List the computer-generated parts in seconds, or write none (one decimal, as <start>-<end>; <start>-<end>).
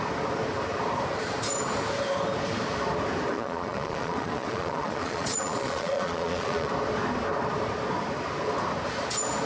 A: 3.3-6.7